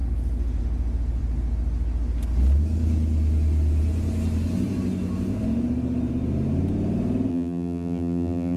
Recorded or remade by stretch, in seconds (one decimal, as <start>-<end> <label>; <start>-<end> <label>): 0.0-7.3 recorded; 7.3-8.6 remade

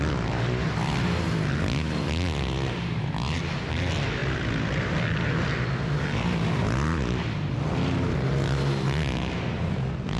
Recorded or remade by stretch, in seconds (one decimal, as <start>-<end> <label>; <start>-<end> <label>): 0.0-4.2 recorded; 4.2-6.6 remade; 6.6-10.2 recorded

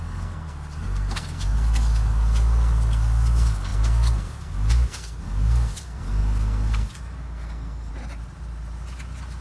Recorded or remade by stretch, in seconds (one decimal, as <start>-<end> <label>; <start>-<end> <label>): 0.0-7.9 remade; 7.9-9.4 recorded

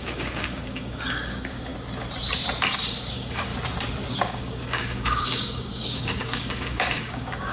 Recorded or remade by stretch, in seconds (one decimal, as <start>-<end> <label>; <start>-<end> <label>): 0.0-1.7 remade; 1.7-3.1 recorded; 3.1-3.5 remade; 3.5-4.2 recorded; 4.2-7.5 remade